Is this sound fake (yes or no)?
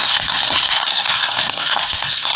yes